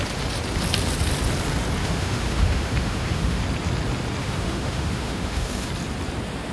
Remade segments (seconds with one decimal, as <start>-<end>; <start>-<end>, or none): 1.8-3.4; 4.2-5.7